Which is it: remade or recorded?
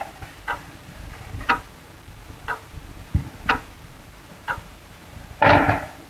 remade